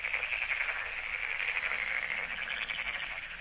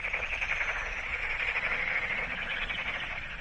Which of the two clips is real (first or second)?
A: first